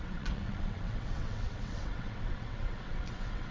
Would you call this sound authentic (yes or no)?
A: no